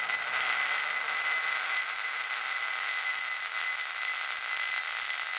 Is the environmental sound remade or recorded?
recorded